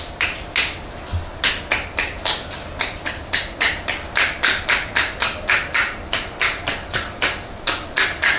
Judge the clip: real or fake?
real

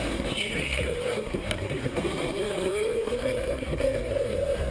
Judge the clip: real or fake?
fake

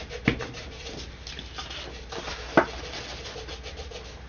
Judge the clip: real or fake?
real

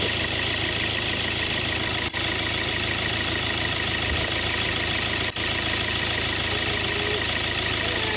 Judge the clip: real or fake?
real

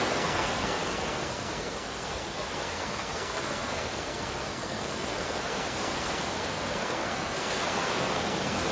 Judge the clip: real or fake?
fake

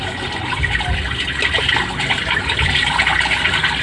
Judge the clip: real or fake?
real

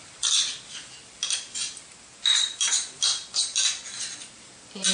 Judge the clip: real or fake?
real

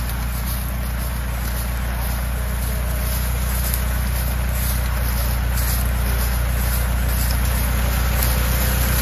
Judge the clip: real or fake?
real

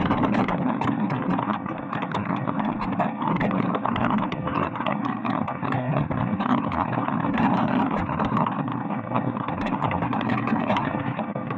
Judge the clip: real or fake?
fake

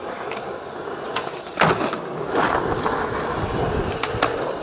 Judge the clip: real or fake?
real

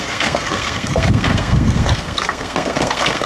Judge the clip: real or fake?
fake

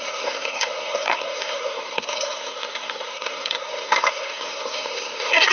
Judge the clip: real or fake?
fake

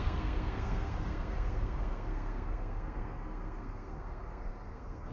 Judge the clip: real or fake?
fake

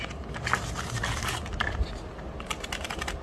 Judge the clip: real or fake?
real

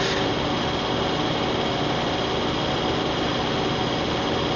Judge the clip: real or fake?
real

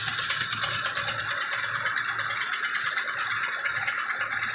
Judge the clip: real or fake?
real